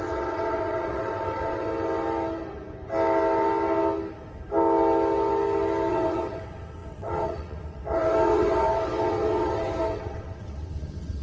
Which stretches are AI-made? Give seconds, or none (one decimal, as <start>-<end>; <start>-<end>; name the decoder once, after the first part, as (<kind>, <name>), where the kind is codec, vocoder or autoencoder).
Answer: 0.0-1.7 (vocoder, WaveNeXt); 5.9-11.2